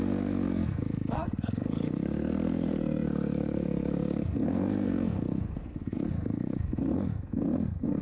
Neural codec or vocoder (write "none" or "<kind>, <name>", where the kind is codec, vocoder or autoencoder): codec, SNAC